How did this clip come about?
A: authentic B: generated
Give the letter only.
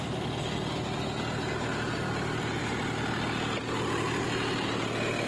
A